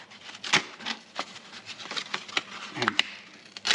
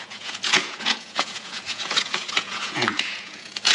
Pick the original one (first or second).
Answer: first